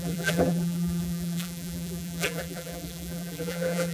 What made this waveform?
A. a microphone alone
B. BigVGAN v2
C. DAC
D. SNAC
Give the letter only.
B